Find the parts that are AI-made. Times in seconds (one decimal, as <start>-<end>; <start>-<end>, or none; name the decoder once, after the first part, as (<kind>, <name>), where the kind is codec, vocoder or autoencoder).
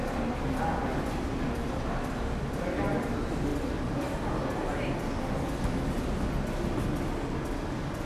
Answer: none